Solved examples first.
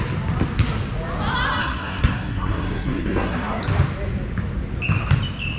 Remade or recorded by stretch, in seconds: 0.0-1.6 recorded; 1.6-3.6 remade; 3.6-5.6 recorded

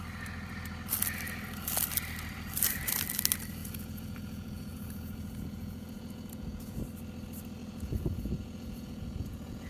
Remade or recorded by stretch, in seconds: 0.0-3.6 recorded; 3.6-6.8 remade; 6.8-7.6 recorded; 7.6-9.7 remade

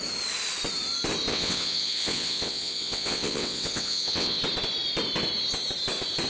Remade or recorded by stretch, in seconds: 0.0-1.3 recorded; 1.3-4.4 remade; 4.4-6.3 recorded

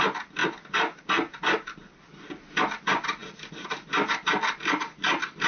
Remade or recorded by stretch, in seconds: 0.0-5.5 recorded